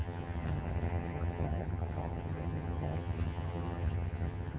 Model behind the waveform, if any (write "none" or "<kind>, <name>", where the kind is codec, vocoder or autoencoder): vocoder, HiFi-GAN